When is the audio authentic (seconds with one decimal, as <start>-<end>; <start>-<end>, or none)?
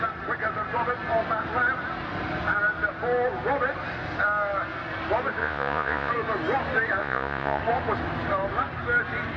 0.0-5.4; 6.1-7.0; 7.6-9.4